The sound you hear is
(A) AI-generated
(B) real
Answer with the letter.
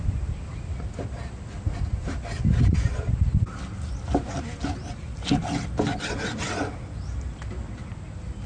B